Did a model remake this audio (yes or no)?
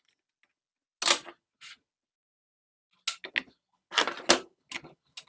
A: no